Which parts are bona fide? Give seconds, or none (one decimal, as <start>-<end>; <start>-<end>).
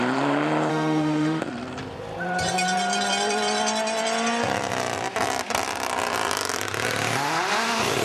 0.0-0.7; 1.4-8.0